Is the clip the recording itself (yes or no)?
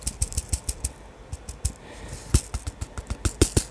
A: yes